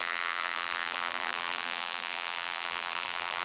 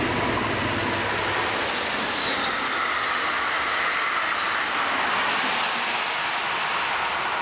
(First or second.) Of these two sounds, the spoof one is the first